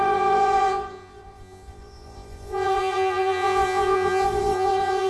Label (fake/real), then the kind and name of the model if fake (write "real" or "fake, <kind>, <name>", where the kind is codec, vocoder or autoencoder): fake, vocoder, Vocos